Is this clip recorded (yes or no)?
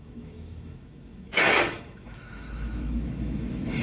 no